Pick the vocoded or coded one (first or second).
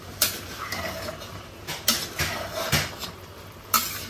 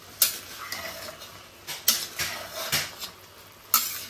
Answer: first